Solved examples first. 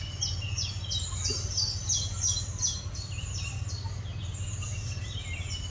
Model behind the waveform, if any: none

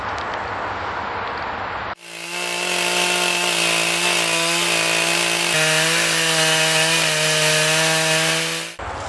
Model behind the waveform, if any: none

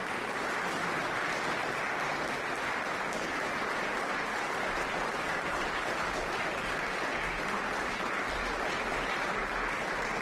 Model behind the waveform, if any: none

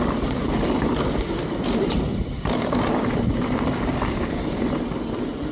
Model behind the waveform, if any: none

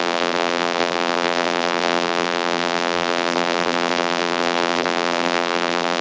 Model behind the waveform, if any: vocoder, BigVGAN v2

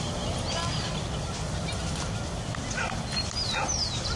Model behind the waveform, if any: none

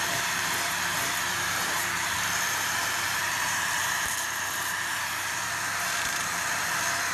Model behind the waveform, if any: vocoder, BigVGAN v2